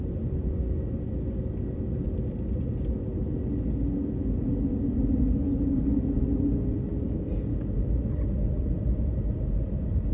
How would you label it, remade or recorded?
recorded